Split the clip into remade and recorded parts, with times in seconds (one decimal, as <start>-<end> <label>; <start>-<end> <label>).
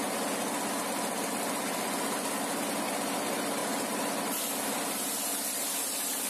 0.0-3.6 recorded; 3.6-4.2 remade; 4.2-6.3 recorded